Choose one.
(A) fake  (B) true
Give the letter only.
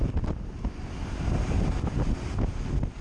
B